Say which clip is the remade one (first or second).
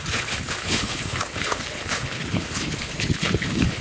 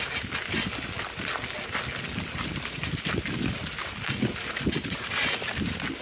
first